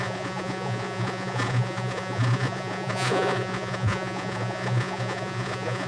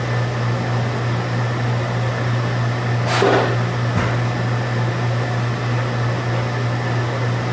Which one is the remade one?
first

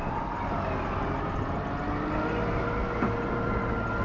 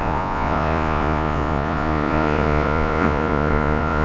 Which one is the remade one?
second